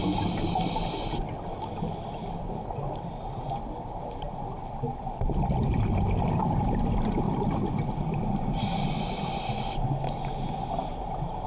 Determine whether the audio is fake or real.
real